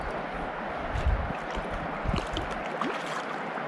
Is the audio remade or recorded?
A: recorded